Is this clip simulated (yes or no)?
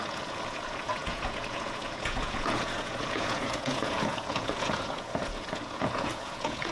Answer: yes